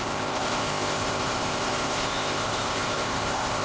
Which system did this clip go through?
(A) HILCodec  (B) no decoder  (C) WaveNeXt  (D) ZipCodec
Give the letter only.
D